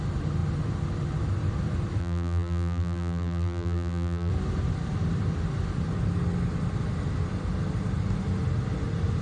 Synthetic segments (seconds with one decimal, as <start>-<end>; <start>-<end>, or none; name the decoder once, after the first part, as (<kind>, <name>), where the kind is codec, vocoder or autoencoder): 2.0-4.3 (vocoder, BigVGAN v2)